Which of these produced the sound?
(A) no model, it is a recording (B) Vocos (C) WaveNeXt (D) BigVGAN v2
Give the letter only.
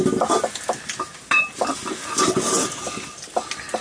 A